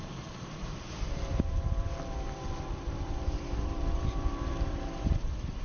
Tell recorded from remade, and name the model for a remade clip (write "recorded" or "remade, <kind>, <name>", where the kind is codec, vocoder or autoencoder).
remade, vocoder, BigVGAN v2